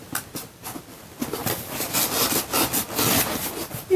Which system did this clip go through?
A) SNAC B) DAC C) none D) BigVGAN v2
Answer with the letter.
C